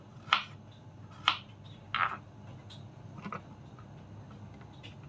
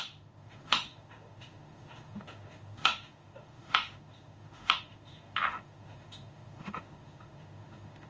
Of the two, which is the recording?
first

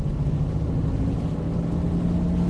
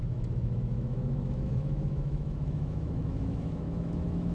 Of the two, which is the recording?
first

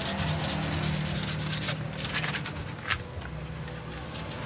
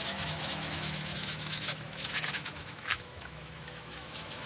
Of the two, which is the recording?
first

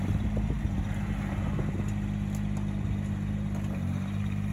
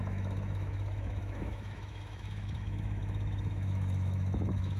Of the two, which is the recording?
first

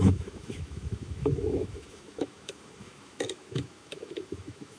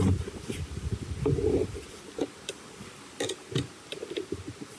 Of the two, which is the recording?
second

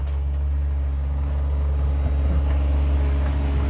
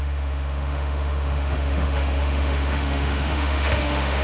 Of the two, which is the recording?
first